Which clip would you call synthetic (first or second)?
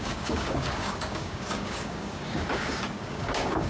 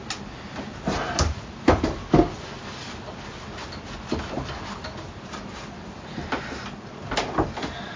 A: first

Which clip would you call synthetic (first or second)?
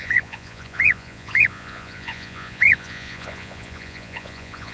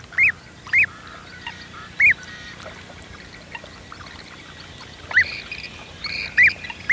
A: first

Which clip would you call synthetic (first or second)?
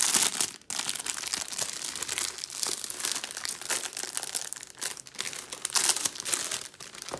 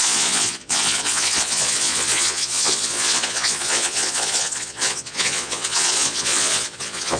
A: second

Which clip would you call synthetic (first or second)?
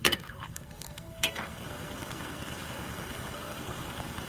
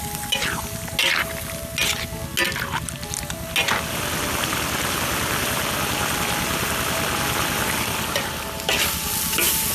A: first